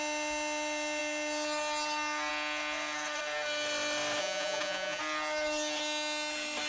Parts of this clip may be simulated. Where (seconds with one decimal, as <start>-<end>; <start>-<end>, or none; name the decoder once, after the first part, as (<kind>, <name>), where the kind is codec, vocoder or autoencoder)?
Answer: 4.2-5.0 (vocoder, Vocos)

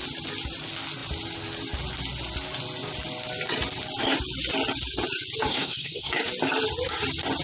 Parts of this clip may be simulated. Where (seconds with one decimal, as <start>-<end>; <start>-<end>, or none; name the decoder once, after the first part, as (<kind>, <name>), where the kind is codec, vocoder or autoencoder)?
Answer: 5.5-6.1 (codec, SNAC)

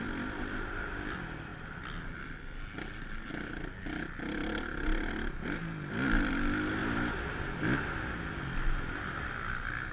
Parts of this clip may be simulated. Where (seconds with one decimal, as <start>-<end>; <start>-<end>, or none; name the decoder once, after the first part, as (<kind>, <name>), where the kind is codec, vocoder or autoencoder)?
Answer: none